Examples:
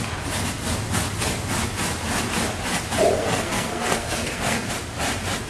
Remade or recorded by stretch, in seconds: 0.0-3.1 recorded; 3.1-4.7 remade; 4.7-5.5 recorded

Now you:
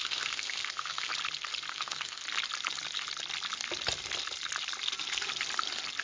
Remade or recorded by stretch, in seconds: 0.0-1.1 remade; 1.1-1.7 recorded; 1.7-2.2 remade; 2.2-6.0 recorded

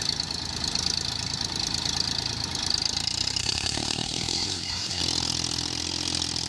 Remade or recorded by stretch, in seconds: 0.0-3.4 recorded; 3.4-5.0 remade; 5.0-6.5 recorded

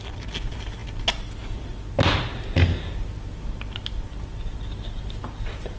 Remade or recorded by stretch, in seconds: 0.0-5.8 recorded

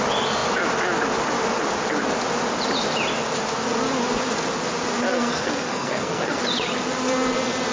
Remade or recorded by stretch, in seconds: 0.0-5.1 recorded; 5.1-6.4 remade; 6.4-7.7 recorded

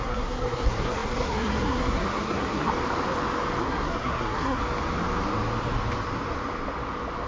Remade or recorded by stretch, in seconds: 0.0-2.7 remade; 2.7-3.6 recorded; 3.6-4.6 remade; 4.6-7.3 recorded

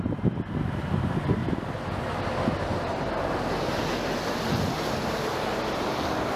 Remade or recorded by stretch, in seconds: 0.0-6.4 recorded